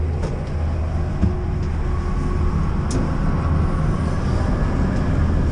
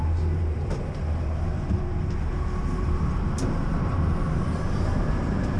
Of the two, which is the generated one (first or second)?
second